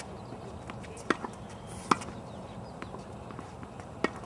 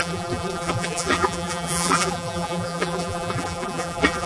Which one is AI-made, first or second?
second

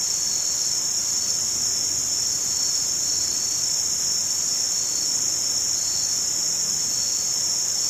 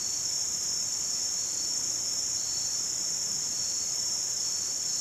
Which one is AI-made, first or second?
second